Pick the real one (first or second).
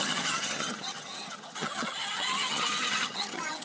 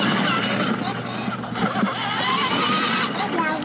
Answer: second